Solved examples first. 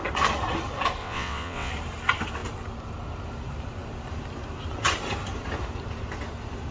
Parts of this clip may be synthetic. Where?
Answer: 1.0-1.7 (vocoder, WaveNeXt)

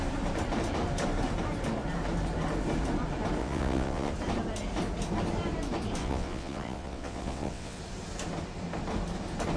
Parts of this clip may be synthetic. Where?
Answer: 3.4-4.1 (vocoder, WaveNeXt); 6.0-7.8

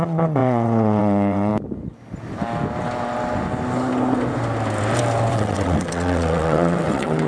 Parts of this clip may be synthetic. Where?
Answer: 0.0-1.5 (vocoder, WaveNeXt); 5.3-7.3

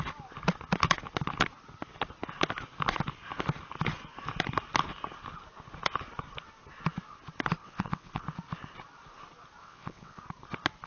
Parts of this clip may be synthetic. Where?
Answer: 7.6-8.2 (vocoder, WaveNeXt); 9.6-10.2